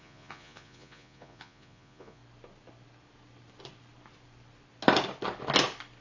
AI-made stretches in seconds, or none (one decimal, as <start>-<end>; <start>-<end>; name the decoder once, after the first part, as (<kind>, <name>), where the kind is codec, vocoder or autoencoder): 0.0-2.2 (vocoder, Vocos)